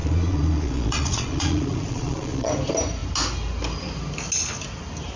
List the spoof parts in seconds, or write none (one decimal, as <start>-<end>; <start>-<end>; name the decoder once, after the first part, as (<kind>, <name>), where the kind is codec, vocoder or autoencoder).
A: 0.0-2.5 (vocoder, Vocos)